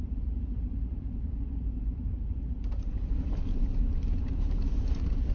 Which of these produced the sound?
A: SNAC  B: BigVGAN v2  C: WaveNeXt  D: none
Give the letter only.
B